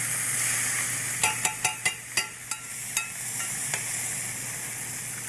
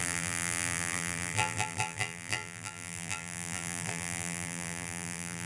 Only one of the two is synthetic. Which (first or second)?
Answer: second